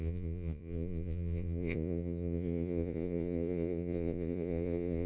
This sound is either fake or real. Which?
fake